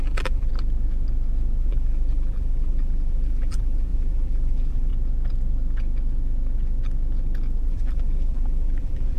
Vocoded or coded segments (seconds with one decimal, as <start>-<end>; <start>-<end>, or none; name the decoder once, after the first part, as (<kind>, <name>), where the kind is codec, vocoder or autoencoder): 0.0-0.5 (vocoder, BigVGAN v2); 1.6-4.9; 7.7-9.2